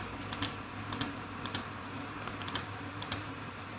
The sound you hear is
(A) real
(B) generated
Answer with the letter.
B